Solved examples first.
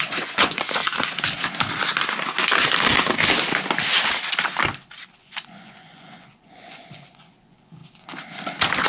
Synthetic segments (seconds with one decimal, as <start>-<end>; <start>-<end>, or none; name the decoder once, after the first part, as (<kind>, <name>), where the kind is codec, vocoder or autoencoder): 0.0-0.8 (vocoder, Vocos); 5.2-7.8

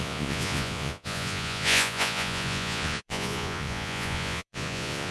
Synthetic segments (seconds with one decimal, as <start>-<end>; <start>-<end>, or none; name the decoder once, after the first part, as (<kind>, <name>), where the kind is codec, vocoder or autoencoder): 0.0-5.1 (vocoder, Vocos)

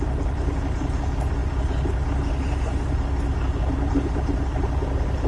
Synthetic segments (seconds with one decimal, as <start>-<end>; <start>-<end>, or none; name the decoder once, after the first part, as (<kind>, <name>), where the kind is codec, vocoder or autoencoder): none

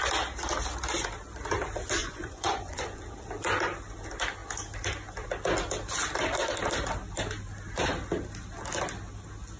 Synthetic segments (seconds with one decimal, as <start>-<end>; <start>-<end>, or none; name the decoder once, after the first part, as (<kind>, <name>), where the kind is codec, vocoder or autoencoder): 2.0-3.0 (vocoder, Vocos)

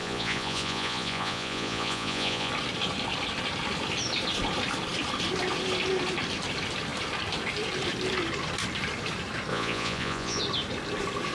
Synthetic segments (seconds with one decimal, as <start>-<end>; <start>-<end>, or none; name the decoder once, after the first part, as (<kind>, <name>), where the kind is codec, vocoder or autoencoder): 0.0-2.5 (vocoder, Vocos); 9.5-10.4

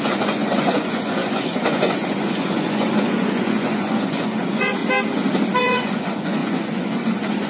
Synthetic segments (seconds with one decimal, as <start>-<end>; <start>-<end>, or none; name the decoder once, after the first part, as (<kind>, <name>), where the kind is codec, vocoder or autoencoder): 0.0-4.8 (vocoder, Vocos); 5.6-7.5